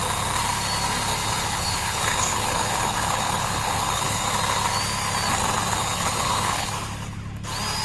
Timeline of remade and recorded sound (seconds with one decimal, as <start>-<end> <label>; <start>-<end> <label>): 0.0-1.1 recorded; 1.1-4.2 remade; 4.2-5.7 recorded; 5.7-6.7 remade; 6.7-7.8 recorded